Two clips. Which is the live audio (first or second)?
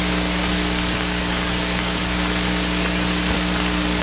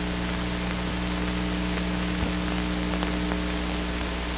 second